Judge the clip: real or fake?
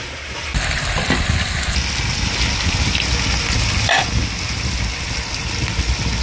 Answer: real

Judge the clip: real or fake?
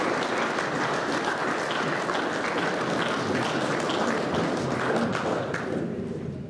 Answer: real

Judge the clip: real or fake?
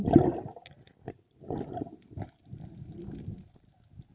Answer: real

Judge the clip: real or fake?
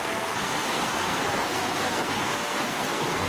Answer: fake